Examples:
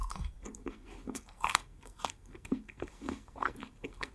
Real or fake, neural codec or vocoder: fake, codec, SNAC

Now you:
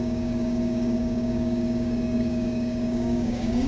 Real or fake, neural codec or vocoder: fake, codec, DAC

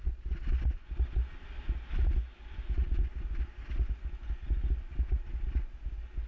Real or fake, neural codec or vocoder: real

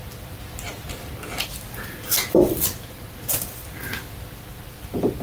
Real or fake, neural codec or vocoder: real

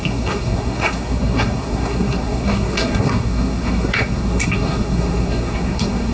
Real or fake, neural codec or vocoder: fake, codec, SNAC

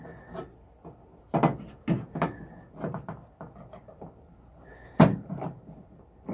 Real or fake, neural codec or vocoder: real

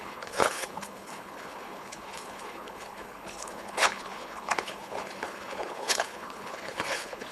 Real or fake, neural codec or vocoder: fake, codec, HILCodec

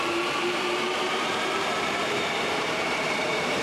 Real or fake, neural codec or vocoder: fake, vocoder, BigVGAN v2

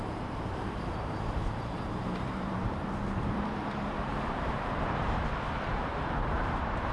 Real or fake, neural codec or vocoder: fake, vocoder, BigVGAN v2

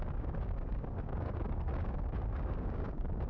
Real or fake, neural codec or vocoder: fake, codec, DAC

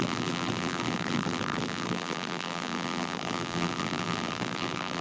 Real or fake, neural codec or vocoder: fake, vocoder, BigVGAN v2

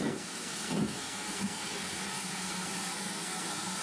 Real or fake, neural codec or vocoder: fake, codec, SNAC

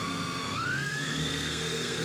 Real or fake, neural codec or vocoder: fake, codec, SNAC